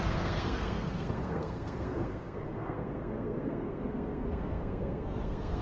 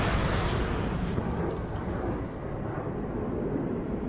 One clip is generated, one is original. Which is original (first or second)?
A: second